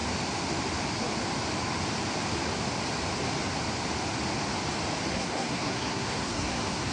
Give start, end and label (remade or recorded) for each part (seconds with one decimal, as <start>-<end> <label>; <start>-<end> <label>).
0.0-5.1 recorded; 5.1-6.9 remade